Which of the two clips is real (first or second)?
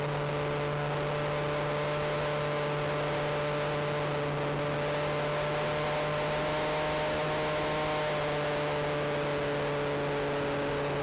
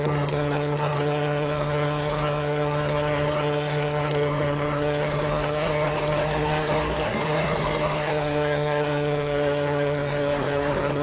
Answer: first